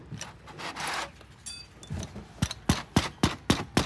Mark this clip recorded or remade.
recorded